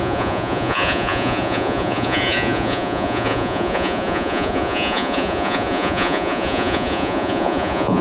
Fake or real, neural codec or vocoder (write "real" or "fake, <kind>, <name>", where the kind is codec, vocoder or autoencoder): fake, vocoder, Vocos